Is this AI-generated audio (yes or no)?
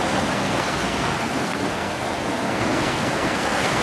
yes